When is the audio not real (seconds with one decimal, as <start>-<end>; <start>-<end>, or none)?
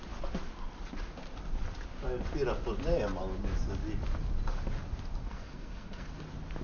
5.2-6.1